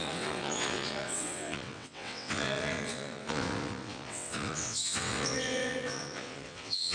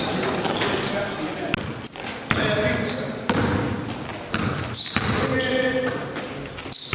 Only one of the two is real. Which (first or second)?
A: second